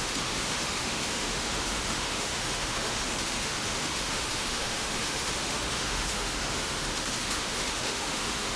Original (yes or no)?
no